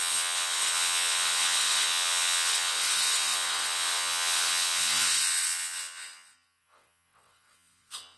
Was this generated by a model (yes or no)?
yes